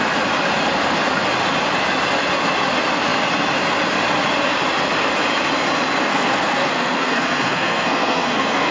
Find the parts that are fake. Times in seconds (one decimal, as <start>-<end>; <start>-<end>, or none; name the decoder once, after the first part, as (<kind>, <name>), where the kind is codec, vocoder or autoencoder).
6.1-8.7 (codec, SNAC)